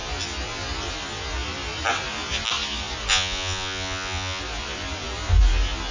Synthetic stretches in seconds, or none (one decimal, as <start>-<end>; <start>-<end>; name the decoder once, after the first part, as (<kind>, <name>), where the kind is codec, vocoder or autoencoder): 3.1-4.4 (vocoder, Vocos)